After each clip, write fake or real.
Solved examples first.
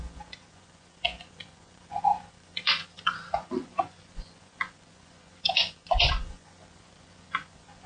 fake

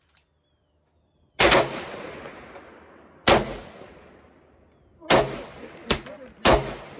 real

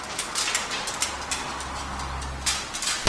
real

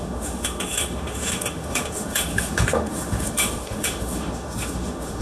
fake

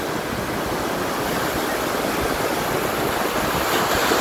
real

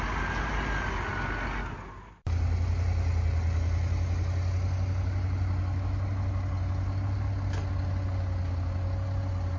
real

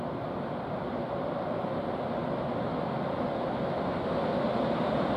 real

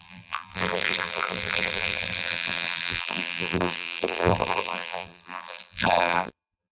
fake